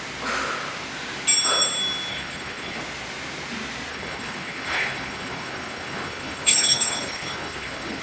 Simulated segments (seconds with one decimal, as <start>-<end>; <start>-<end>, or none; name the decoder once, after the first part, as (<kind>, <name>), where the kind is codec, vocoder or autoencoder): 2.1-2.8 (codec, HILCodec); 3.9-8.0